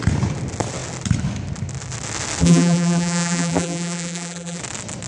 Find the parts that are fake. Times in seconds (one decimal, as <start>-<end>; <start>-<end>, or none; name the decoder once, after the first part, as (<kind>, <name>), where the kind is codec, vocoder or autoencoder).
2.4-4.6 (vocoder, BigVGAN v2)